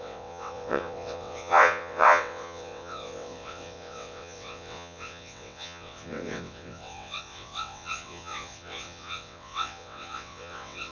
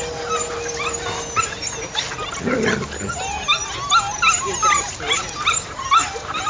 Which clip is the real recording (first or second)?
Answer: second